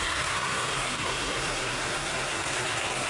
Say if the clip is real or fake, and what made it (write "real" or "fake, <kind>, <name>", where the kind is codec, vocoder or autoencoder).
fake, codec, SNAC